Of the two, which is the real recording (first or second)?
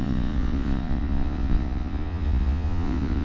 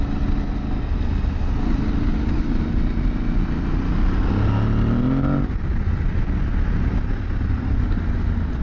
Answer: second